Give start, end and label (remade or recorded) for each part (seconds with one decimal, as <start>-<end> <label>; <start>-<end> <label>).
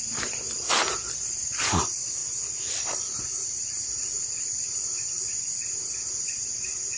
0.0-7.0 recorded